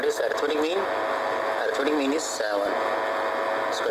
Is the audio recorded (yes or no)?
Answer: yes